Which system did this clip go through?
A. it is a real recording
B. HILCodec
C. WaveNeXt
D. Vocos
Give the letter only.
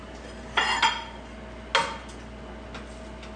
A